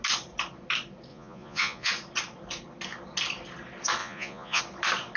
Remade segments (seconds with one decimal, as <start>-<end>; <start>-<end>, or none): 1.1-1.9; 4.0-4.6